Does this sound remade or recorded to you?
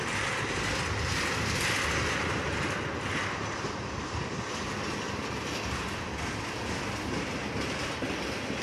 recorded